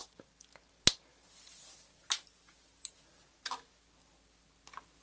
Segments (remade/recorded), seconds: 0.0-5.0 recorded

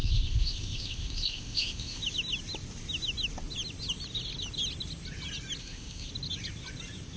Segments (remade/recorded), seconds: 0.0-2.0 remade; 2.0-5.6 recorded; 5.6-6.1 remade; 6.1-7.2 recorded

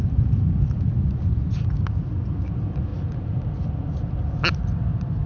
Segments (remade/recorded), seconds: 0.0-5.3 recorded

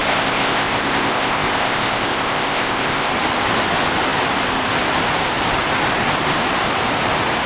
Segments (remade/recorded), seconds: 0.0-3.1 remade; 3.1-7.5 recorded

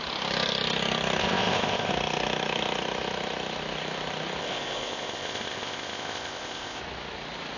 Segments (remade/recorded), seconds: 0.0-1.2 recorded; 1.2-1.9 remade; 1.9-4.4 recorded; 4.4-6.8 remade; 6.8-7.6 recorded

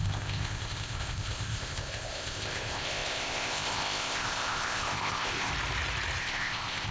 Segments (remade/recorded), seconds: 0.0-5.5 remade; 5.5-6.2 recorded; 6.2-6.9 remade